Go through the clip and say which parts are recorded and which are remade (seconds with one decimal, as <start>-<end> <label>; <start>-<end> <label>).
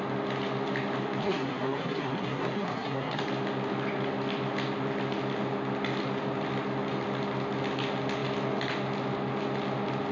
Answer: 0.0-1.2 recorded; 1.2-3.2 remade; 3.2-10.1 recorded